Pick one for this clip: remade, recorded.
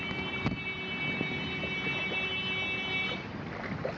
recorded